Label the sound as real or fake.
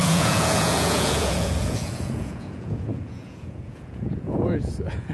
fake